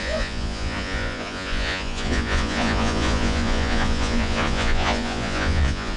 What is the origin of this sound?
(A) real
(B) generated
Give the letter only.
B